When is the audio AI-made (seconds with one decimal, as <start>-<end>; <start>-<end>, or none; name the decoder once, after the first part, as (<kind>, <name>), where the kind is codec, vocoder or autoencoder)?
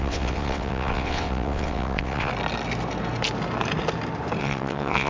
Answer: 0.0-2.3 (vocoder, WaveNeXt); 4.4-5.1